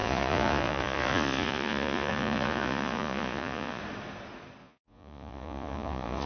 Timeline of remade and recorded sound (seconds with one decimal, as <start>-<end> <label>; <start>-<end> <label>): 0.0-3.8 remade; 3.8-4.6 recorded; 4.6-6.3 remade